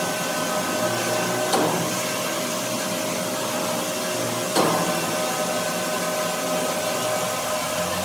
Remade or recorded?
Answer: recorded